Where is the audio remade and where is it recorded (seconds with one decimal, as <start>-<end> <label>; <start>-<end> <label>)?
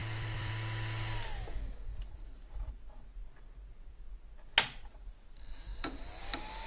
0.0-0.5 remade; 0.5-1.9 recorded; 1.9-2.7 remade; 2.7-5.7 recorded; 5.7-6.2 remade; 6.2-6.7 recorded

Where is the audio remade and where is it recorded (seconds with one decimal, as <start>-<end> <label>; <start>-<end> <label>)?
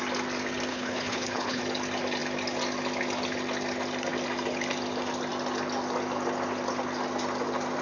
0.0-0.7 recorded; 0.7-1.6 remade; 1.6-7.8 recorded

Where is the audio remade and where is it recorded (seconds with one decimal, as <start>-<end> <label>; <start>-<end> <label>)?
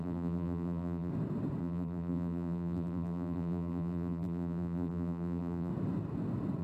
0.0-1.1 remade; 1.1-1.6 recorded; 1.6-5.7 remade; 5.7-6.6 recorded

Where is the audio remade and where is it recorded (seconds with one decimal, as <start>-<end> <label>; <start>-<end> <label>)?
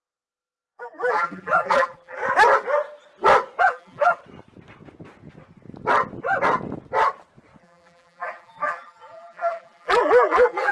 0.0-2.2 remade; 2.2-3.6 recorded; 3.6-4.2 remade; 4.2-7.6 recorded; 7.6-10.7 remade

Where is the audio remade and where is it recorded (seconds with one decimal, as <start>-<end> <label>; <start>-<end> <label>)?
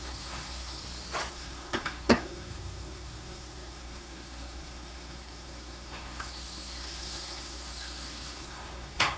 0.0-0.8 remade; 0.8-1.3 recorded; 1.3-9.2 remade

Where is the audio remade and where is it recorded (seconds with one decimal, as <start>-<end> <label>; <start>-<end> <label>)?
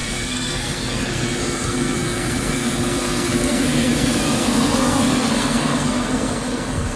0.0-7.0 remade